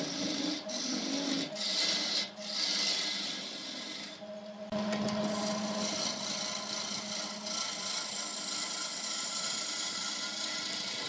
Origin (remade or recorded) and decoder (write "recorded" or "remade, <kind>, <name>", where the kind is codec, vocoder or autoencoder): recorded